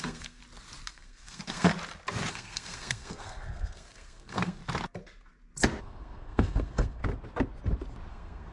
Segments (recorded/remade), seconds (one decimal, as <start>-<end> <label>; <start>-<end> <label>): 0.0-0.4 remade; 0.4-0.9 recorded; 0.9-1.7 remade; 1.7-2.3 recorded; 2.3-4.6 remade; 4.6-5.8 recorded; 5.8-7.0 remade; 7.0-8.1 recorded; 8.1-8.5 remade